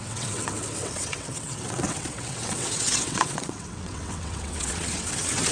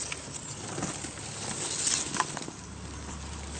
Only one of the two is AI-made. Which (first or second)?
first